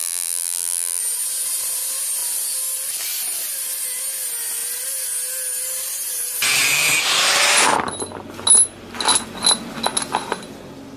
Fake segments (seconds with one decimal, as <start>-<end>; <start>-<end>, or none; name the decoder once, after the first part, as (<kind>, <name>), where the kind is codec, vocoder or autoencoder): 0.0-1.0 (vocoder, BigVGAN v2)